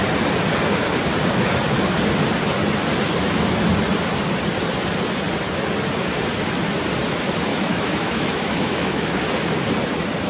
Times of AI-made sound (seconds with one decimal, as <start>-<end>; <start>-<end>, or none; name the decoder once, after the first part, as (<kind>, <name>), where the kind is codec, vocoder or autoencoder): 7.5-9.2 (autoencoder, DAC-VAE)